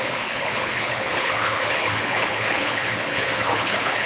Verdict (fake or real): fake